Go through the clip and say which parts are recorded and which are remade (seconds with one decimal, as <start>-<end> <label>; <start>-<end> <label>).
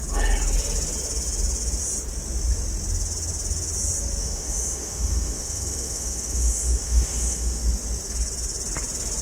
0.0-4.2 recorded; 4.2-7.6 remade; 7.6-9.2 recorded